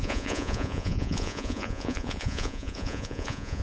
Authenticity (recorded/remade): remade